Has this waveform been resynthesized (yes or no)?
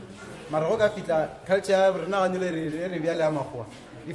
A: yes